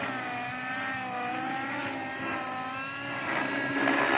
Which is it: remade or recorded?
recorded